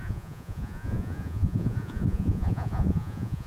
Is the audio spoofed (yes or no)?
yes